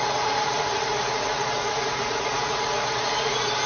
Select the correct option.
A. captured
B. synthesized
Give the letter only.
B